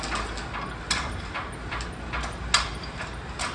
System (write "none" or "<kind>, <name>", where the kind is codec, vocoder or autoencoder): none